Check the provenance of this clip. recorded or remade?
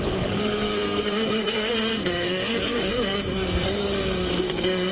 remade